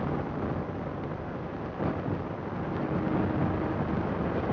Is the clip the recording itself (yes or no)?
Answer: yes